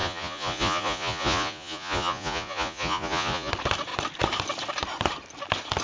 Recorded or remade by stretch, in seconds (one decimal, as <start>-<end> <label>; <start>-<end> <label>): 0.0-3.5 remade; 3.5-5.8 recorded